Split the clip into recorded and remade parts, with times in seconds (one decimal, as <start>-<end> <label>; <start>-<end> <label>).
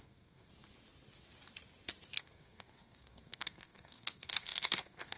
0.0-0.5 remade; 0.5-2.2 recorded; 2.2-5.2 remade